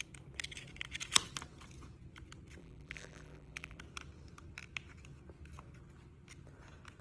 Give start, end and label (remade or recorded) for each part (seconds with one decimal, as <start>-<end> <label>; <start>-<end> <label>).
0.0-2.6 recorded; 2.6-3.8 remade; 3.8-7.0 recorded